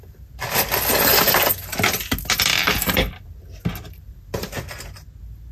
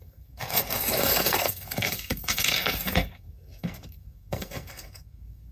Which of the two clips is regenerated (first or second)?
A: second